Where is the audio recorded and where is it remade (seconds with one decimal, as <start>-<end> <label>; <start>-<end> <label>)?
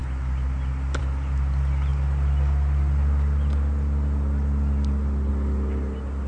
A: 0.0-6.3 recorded